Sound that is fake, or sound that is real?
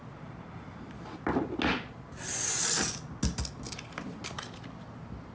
real